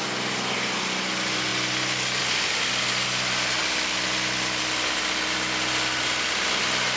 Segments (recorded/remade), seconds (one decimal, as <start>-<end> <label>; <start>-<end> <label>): 0.0-7.0 recorded